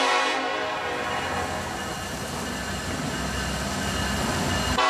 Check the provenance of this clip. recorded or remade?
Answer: recorded